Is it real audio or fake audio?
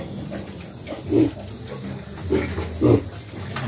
real